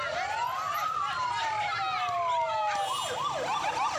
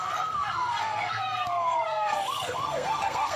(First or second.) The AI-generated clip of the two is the second